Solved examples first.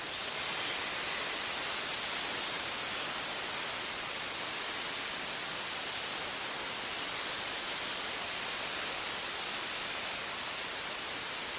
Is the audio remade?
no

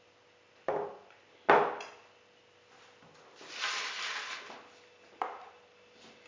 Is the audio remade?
no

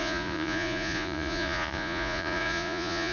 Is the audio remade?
yes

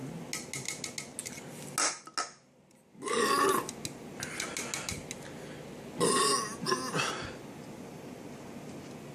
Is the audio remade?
no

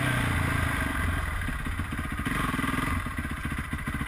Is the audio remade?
no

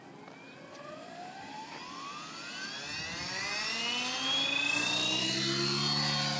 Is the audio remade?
no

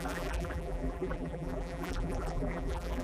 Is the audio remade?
yes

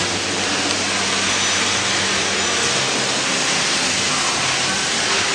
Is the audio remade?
no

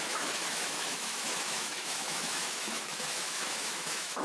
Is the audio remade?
yes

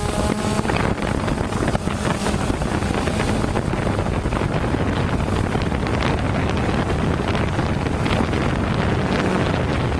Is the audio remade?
no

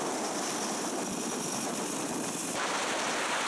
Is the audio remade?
no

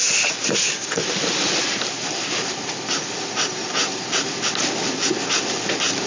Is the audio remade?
no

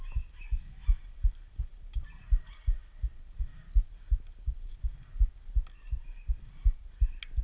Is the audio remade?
no